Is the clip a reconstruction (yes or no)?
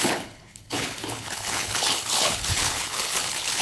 yes